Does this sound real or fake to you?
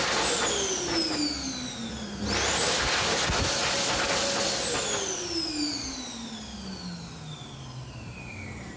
real